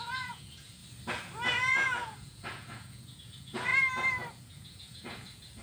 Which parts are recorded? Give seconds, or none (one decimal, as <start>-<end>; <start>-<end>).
0.8-1.7; 3.7-4.3